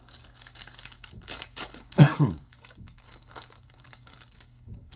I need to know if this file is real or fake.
fake